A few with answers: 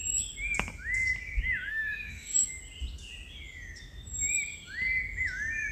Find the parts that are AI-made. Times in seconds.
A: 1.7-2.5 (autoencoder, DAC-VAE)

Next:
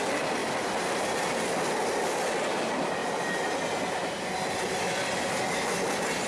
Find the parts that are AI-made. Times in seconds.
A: none

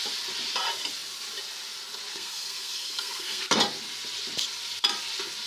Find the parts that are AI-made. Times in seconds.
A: 2.1-3.4 (codec, SNAC)

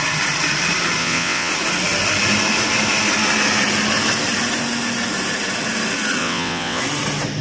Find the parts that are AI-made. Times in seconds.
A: 1.0-1.5 (vocoder, WaveNeXt); 6.2-6.8

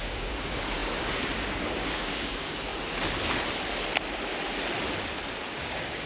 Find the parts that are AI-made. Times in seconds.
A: 0.0-2.7 (codec, DAC); 5.5-6.1

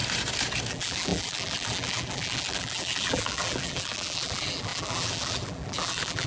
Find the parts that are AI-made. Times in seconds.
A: 0.7-6.3 (vocoder, BigVGAN v2)

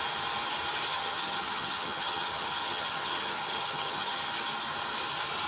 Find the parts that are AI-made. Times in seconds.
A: 0.9-4.2 (vocoder, HiFi-GAN)